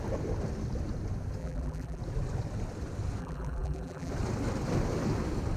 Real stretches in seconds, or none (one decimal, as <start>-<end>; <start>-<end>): 0.0-1.4; 2.0-3.2; 4.1-5.6